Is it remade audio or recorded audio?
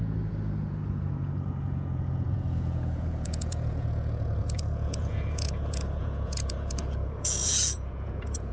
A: remade